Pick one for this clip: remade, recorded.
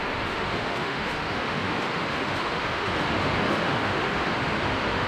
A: remade